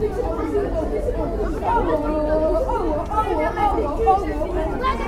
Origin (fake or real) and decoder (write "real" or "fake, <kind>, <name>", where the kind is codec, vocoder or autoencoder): fake, vocoder, BigVGAN v2